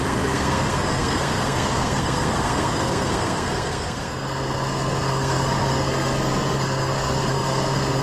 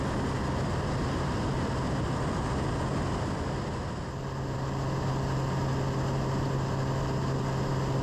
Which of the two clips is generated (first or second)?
first